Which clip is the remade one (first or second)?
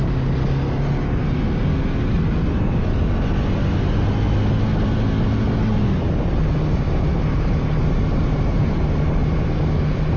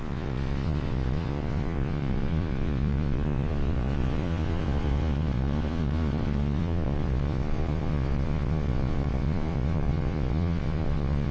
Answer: second